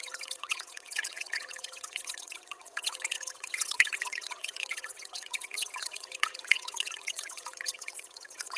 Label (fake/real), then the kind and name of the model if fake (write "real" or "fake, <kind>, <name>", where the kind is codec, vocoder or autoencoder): fake, vocoder, WaveNeXt